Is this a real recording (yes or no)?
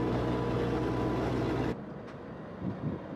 yes